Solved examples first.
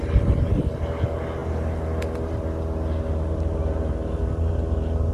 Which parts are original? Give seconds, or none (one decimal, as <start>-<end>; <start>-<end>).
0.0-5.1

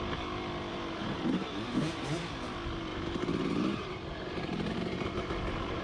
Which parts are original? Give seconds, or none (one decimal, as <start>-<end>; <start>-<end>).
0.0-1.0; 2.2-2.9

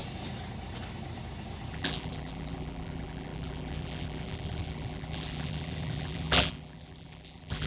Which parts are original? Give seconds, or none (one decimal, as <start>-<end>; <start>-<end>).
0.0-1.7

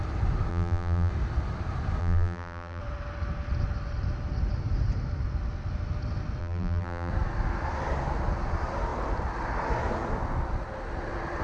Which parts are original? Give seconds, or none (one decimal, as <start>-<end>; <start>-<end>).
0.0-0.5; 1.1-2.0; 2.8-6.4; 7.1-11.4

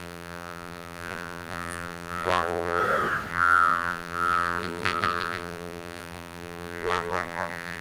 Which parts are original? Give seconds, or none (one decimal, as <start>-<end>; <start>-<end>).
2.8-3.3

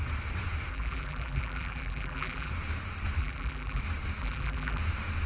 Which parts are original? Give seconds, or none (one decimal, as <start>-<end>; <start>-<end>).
0.0-0.7; 2.5-3.2; 3.8-4.2; 4.8-5.3

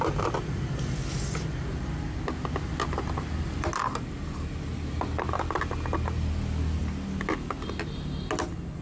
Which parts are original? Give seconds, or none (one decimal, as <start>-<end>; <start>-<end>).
0.0-8.8

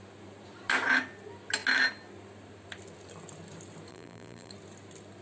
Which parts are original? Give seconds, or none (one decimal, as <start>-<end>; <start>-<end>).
0.0-3.9; 4.5-5.2